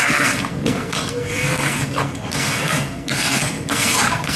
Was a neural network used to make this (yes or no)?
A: yes